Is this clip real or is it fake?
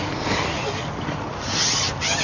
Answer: real